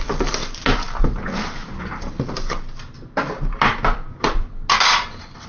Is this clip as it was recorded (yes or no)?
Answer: yes